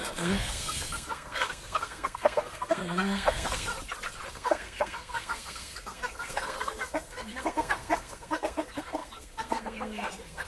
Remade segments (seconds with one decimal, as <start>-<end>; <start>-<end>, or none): 0.0-3.7; 4.3-10.5